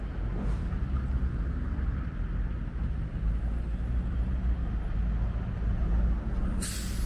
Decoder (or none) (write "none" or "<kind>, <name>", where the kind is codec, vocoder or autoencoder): none